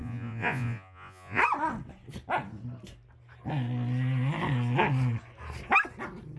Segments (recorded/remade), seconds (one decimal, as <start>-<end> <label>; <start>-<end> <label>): 0.0-1.4 remade; 1.4-6.4 recorded